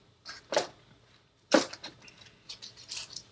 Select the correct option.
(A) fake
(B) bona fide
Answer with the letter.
B